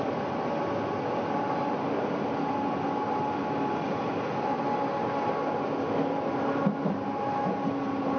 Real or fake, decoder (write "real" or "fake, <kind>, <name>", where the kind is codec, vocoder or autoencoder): real